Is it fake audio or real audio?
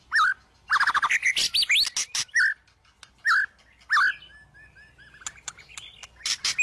real